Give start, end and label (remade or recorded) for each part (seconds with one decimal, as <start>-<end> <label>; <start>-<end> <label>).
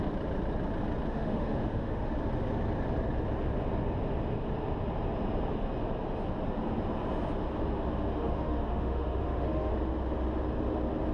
0.0-1.1 recorded; 1.1-2.1 remade; 2.1-8.1 recorded; 8.1-9.7 remade; 9.7-11.1 recorded